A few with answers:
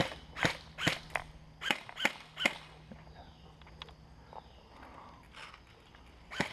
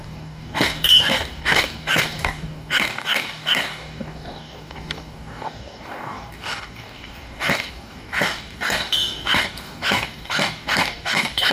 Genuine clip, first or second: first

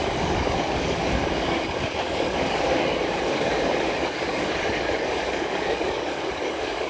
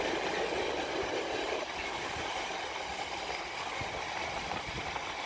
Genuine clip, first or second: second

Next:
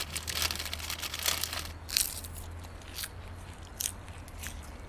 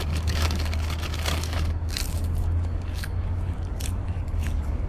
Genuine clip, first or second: first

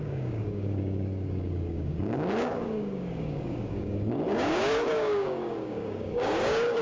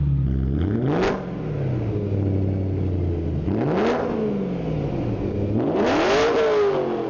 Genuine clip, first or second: second